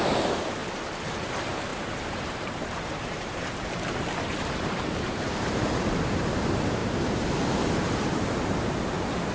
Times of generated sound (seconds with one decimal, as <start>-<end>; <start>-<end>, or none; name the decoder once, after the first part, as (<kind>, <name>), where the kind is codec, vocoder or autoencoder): 0.0-0.6 (vocoder, BigVGAN v2); 1.1-9.3